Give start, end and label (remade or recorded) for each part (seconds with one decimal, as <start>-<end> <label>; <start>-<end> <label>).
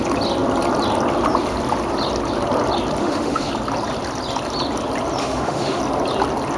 0.0-3.0 recorded; 3.0-3.5 remade; 3.5-5.2 recorded; 5.2-5.8 remade; 5.8-6.6 recorded